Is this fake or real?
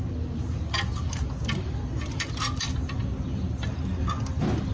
real